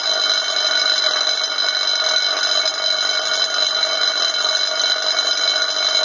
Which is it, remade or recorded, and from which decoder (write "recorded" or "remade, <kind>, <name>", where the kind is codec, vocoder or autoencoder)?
recorded